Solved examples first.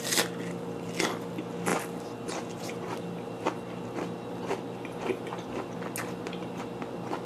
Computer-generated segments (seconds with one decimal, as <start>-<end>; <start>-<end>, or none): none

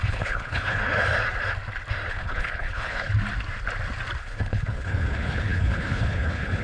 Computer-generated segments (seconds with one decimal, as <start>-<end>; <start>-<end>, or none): 0.0-0.8; 2.1-3.1; 4.2-6.6

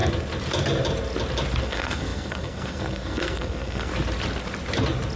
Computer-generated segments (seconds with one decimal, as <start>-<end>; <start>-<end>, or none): 1.6-3.9

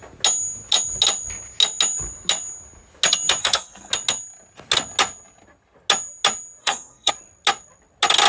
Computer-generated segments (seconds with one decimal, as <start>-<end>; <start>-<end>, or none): 3.4-3.9; 6.6-7.1

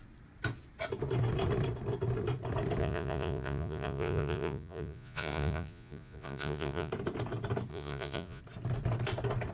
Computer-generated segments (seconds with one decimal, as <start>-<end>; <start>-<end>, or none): 2.8-6.9; 7.7-8.4

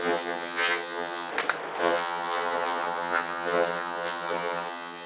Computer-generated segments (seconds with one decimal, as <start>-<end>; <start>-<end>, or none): 0.0-1.3; 1.8-5.1

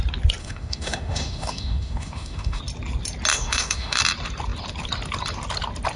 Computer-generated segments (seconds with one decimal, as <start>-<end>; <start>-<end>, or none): 0.4-2.6; 3.3-4.0